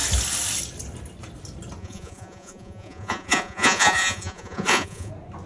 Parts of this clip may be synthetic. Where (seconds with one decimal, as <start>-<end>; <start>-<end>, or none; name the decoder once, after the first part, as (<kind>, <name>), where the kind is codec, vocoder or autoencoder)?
1.8-5.1 (vocoder, Vocos)